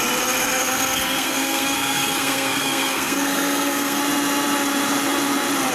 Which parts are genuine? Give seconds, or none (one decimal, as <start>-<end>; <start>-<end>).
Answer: 0.0-0.6; 4.0-5.7